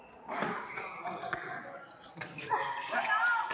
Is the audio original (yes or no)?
yes